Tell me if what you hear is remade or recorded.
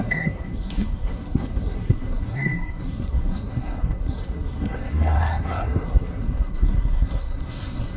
remade